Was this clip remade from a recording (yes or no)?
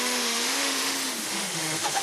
yes